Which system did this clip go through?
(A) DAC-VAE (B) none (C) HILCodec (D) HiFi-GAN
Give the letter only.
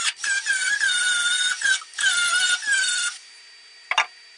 B